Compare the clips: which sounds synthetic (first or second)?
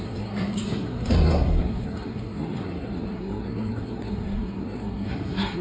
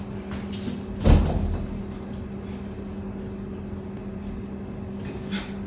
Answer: first